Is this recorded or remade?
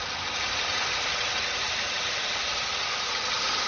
recorded